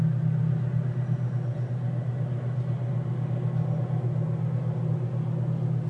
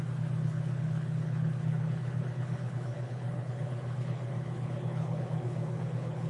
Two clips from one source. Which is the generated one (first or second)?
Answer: second